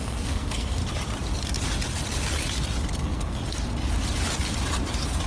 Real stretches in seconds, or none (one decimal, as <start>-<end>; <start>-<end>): 0.8-3.0; 3.4-5.3